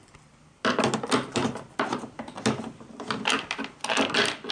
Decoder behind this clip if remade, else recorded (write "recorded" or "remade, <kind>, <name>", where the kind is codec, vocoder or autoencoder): recorded